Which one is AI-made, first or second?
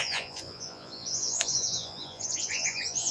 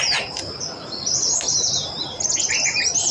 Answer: first